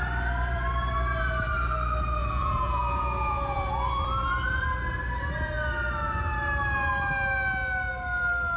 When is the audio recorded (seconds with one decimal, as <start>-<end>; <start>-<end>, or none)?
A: 0.0-2.2; 3.7-8.6